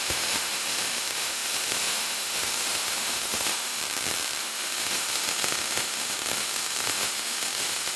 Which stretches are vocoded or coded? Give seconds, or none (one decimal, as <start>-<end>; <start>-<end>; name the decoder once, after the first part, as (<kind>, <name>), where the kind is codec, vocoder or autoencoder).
0.0-3.8 (autoencoder, DAC-VAE); 4.4-8.0